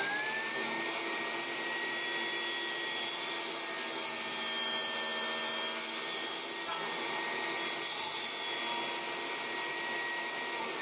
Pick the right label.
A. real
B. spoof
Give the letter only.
A